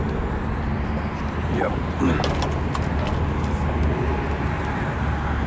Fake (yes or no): no